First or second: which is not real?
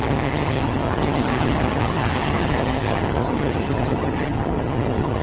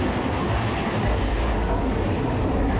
first